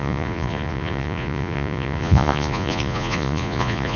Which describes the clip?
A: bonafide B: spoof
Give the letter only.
B